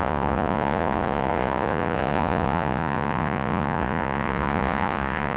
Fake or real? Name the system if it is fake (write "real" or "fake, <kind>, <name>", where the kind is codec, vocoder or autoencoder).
fake, vocoder, Vocos